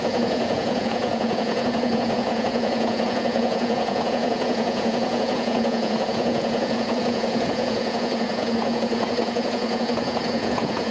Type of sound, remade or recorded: remade